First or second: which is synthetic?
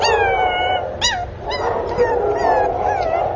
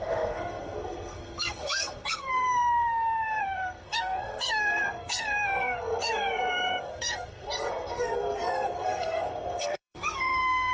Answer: second